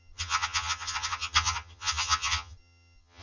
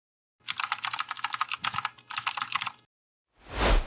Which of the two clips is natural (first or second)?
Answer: second